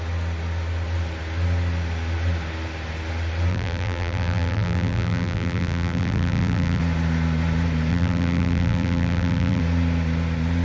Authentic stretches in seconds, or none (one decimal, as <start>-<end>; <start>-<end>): 0.0-3.5; 6.8-7.9; 9.6-10.6